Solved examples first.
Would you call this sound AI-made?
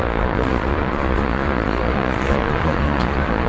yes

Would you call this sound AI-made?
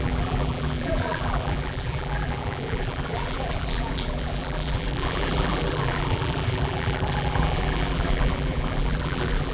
yes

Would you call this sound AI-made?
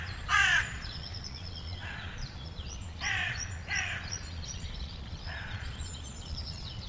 yes